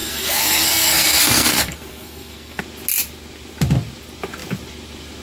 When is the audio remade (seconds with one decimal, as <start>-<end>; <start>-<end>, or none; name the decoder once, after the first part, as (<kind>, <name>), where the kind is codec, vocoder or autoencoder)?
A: 0.0-2.6 (codec, SNAC)